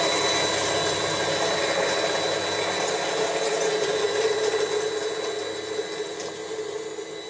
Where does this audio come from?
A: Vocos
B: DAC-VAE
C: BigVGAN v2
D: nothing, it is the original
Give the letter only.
D